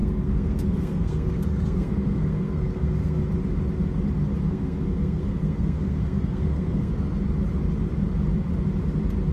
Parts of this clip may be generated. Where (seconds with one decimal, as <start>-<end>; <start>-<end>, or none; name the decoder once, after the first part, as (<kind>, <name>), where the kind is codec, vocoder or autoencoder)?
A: 0.0-3.2 (codec, SNAC); 4.5-6.9